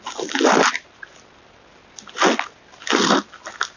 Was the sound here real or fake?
real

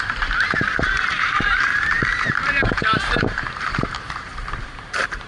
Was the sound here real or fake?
fake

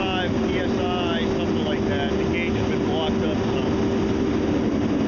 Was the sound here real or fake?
real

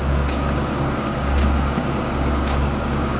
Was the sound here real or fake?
fake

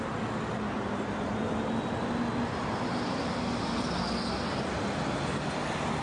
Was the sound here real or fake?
real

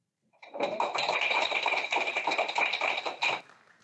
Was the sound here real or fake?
fake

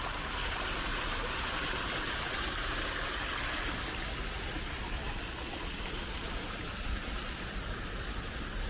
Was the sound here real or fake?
real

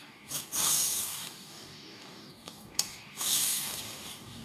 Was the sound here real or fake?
fake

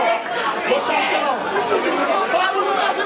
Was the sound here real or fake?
fake